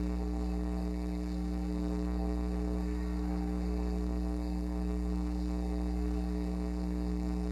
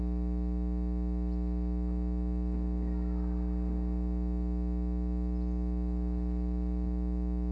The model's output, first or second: first